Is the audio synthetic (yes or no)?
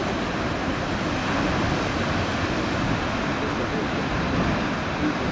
no